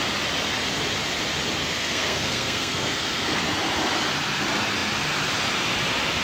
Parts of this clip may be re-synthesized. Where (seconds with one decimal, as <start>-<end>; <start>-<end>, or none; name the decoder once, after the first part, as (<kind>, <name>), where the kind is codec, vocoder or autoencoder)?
1.6-3.4 (codec, SNAC)